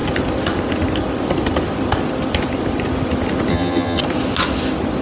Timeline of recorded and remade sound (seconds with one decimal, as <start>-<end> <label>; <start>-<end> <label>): 0.0-3.5 recorded; 3.5-4.0 remade; 4.0-5.0 recorded